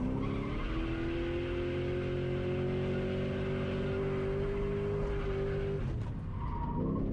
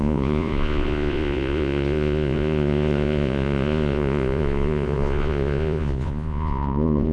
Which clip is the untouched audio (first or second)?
first